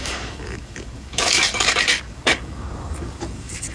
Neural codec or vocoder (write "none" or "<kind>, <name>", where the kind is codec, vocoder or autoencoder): codec, DAC